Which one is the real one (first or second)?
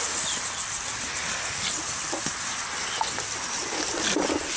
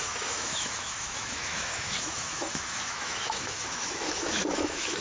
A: first